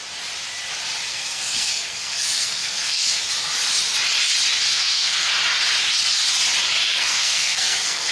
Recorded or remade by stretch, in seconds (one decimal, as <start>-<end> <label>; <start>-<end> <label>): 0.0-1.1 recorded; 1.1-3.2 remade; 3.2-4.7 recorded; 4.7-5.3 remade; 5.3-6.8 recorded; 6.8-8.1 remade